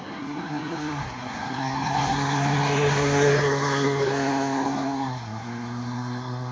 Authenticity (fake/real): fake